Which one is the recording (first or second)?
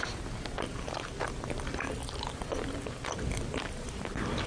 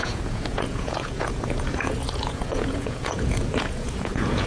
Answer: first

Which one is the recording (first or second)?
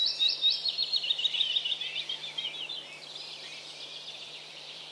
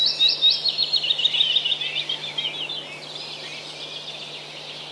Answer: second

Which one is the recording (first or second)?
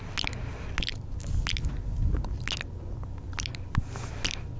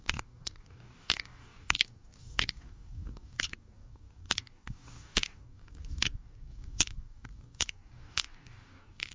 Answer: first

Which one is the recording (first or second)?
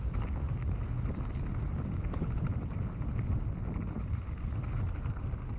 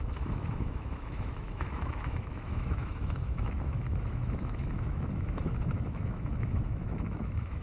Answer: first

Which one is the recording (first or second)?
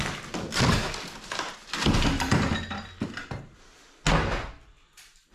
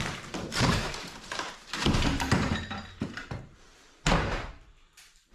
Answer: first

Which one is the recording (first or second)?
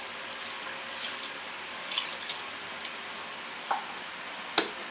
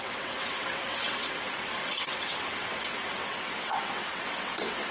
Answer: first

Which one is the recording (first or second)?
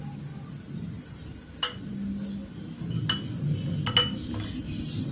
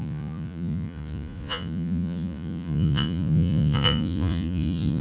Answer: first